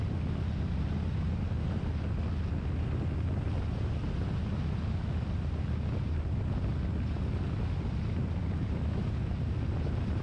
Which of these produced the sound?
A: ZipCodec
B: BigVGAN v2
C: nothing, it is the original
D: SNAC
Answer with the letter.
C